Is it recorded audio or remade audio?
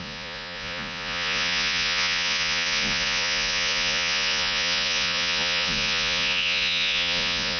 remade